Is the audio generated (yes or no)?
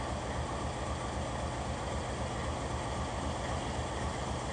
no